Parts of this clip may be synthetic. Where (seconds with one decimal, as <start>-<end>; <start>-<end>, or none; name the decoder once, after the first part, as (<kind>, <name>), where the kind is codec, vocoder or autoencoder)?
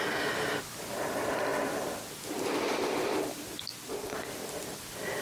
none